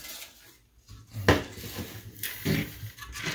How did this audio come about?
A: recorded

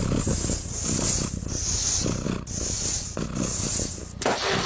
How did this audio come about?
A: recorded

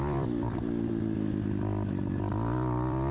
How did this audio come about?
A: remade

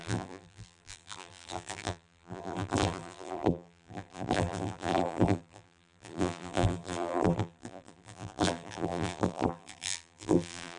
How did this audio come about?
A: remade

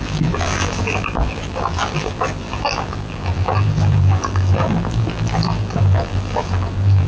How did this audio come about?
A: remade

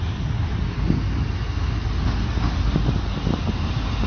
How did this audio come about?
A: recorded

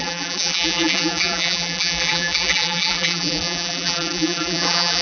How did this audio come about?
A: remade